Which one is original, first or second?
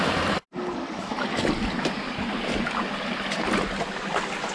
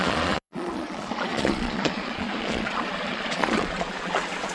first